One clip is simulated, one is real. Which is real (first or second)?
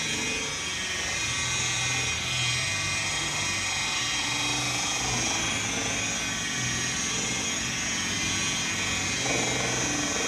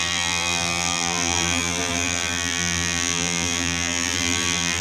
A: first